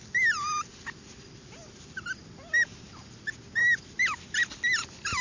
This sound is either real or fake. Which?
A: real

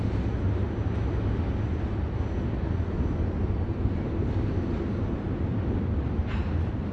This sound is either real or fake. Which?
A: real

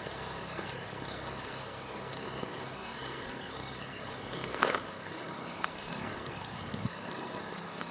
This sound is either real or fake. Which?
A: fake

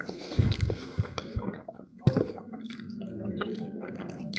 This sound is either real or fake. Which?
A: fake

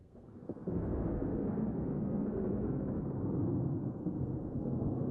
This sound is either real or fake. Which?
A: fake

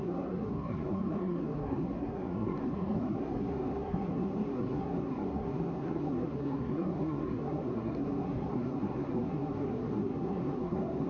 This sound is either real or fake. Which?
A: fake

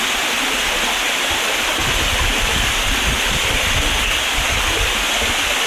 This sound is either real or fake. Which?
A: real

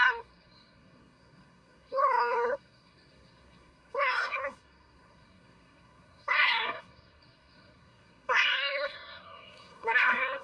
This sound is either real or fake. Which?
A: fake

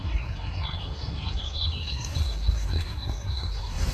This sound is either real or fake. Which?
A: fake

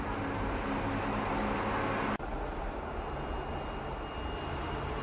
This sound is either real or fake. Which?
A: real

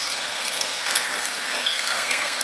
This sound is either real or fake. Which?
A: fake